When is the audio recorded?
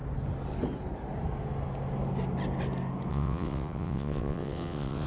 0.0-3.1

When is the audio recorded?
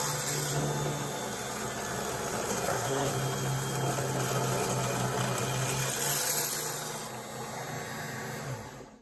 0.0-2.5; 3.1-9.0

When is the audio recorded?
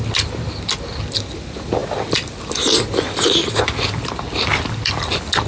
0.0-5.5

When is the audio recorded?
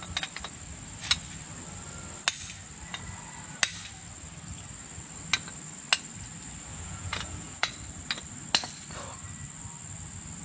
0.0-6.7; 7.7-10.4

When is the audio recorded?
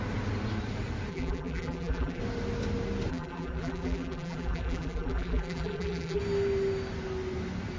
0.0-1.1; 2.2-3.1; 6.2-7.8